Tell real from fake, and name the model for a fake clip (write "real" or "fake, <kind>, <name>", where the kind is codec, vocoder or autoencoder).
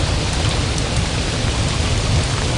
real